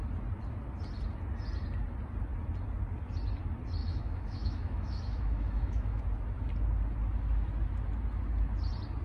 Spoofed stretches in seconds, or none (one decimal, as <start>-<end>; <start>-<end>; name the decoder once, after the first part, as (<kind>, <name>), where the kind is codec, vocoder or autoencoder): 3.8-6.0 (autoencoder, DAC-VAE)